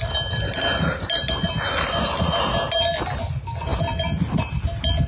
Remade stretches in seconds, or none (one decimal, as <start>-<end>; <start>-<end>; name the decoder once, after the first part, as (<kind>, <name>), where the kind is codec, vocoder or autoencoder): none